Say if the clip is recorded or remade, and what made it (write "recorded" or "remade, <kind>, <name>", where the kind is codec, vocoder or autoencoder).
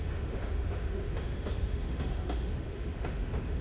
remade, autoencoder, DAC-VAE